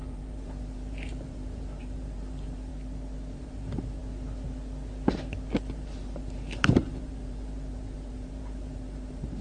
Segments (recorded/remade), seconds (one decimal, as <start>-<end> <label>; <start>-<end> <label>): 0.0-2.7 remade; 2.7-3.3 recorded; 3.3-4.0 remade; 4.0-5.7 recorded; 5.7-9.4 remade